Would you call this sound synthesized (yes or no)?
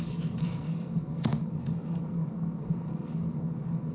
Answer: yes